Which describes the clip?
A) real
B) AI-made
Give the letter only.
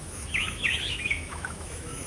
B